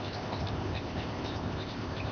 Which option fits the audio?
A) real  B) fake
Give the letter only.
B